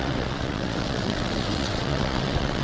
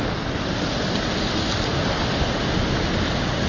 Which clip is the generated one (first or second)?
first